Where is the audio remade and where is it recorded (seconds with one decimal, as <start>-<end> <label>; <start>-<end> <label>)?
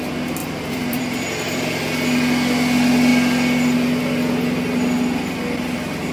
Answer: 0.0-0.4 recorded; 0.4-1.0 remade; 1.0-6.1 recorded